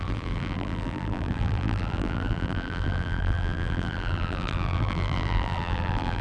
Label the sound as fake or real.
fake